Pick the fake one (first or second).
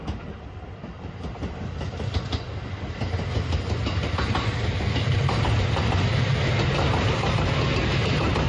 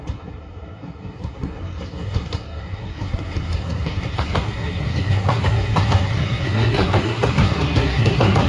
second